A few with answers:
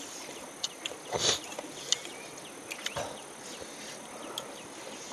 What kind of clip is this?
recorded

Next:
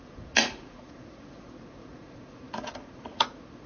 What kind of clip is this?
remade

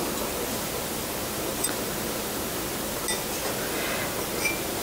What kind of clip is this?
recorded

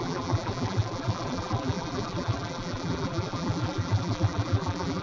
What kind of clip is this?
remade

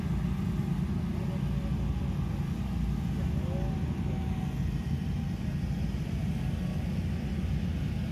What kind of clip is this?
recorded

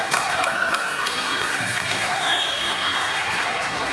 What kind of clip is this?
remade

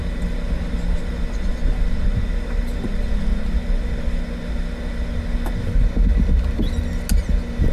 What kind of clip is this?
recorded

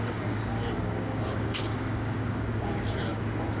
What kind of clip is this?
remade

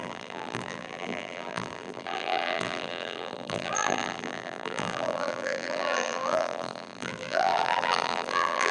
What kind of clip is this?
remade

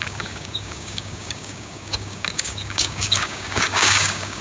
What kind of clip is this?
remade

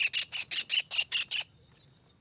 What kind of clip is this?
recorded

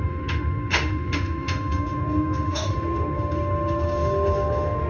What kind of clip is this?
remade